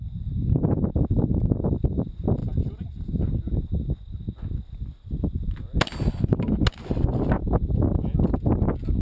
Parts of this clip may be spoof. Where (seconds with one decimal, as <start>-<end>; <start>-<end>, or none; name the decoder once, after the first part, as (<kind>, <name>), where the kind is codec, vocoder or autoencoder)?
none